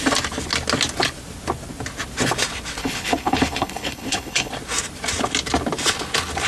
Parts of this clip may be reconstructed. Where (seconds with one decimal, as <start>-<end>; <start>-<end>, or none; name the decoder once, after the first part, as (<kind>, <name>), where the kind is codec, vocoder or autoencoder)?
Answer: 2.8-4.5 (codec, HILCodec)